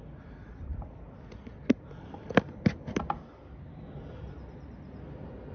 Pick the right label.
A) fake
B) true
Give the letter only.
B